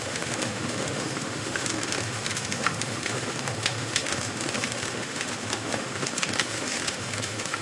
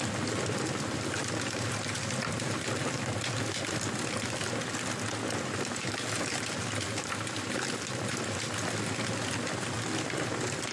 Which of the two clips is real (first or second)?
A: second